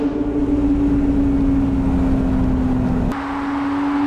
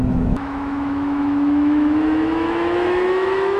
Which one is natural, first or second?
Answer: first